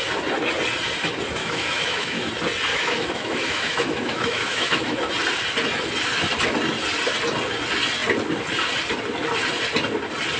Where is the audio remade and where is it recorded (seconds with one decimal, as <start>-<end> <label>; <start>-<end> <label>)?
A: 0.0-1.4 recorded; 1.4-2.3 remade; 2.3-2.7 recorded; 2.7-5.1 remade; 5.1-10.4 recorded